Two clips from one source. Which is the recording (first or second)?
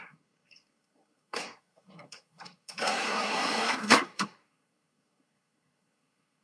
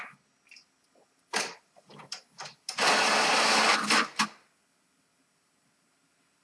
second